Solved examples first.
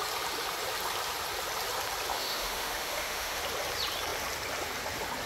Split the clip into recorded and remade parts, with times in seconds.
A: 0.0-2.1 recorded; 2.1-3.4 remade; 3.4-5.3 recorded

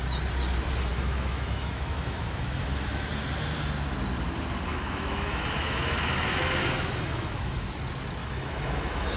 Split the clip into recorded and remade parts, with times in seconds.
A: 0.0-0.9 recorded; 0.9-3.1 remade; 3.1-4.7 recorded; 4.7-7.6 remade; 7.6-8.2 recorded; 8.2-9.2 remade